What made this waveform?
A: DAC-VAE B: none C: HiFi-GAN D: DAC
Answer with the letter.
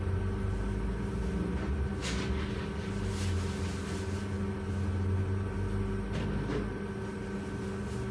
B